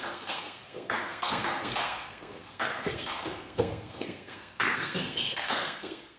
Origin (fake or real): fake